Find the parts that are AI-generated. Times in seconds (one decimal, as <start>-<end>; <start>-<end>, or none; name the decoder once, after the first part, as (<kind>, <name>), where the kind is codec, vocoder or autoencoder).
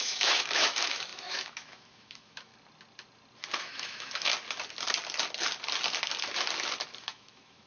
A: 0.0-2.5 (autoencoder, DAC-VAE); 3.6-4.3; 7.0-7.7